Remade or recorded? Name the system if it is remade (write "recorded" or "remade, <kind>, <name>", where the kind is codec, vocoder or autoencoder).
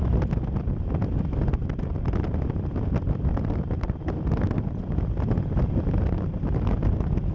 recorded